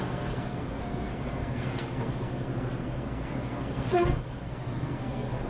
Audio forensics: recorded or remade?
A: remade